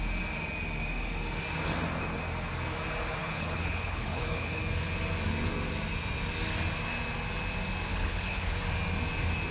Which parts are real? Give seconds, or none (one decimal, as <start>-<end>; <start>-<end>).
0.0-3.2; 4.6-7.9; 8.6-9.5